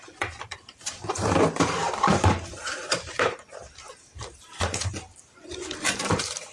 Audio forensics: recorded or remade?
remade